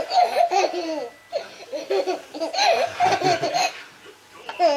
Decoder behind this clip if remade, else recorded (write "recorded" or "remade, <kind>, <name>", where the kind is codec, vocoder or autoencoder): recorded